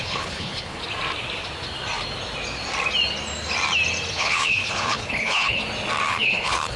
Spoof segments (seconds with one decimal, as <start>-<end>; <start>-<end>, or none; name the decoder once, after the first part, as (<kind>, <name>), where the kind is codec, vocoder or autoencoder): 0.0-0.8 (codec, HILCodec); 4.1-5.6; 6.1-6.8